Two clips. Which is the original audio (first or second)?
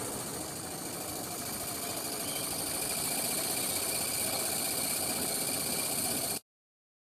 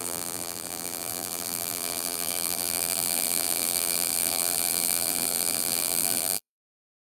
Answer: first